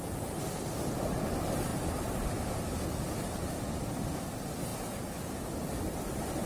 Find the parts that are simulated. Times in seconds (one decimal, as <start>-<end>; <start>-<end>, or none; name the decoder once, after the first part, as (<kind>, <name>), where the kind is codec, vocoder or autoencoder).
none